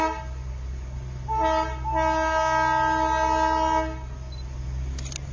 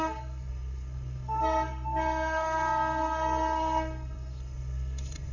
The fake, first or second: second